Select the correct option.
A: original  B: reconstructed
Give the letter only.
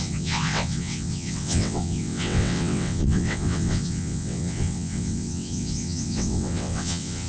B